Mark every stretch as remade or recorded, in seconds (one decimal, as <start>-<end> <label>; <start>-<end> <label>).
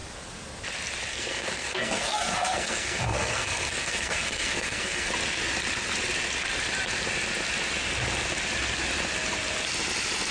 0.0-1.1 recorded; 1.1-5.1 remade; 5.1-10.3 recorded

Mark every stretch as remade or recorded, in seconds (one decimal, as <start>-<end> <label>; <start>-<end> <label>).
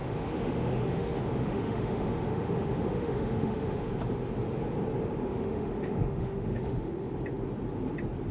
0.0-3.9 remade; 3.9-5.3 recorded; 5.3-7.1 remade; 7.1-8.3 recorded